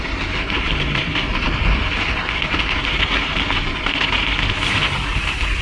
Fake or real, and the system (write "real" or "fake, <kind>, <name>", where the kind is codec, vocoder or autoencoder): real